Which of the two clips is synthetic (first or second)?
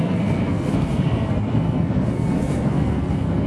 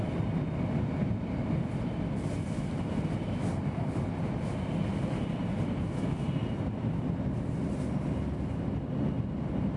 first